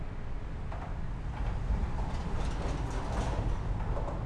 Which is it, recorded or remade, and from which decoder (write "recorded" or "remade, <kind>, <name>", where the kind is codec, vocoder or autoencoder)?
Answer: recorded